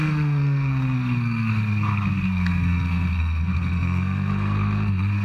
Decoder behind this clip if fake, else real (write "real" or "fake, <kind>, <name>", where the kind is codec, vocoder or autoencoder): fake, codec, SNAC